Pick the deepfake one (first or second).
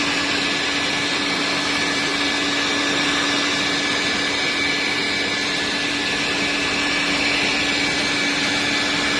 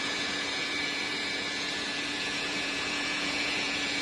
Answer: second